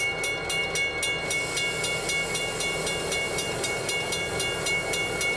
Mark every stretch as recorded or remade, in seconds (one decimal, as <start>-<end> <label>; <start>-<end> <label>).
0.0-5.4 recorded